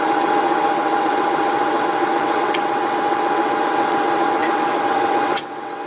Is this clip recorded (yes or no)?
no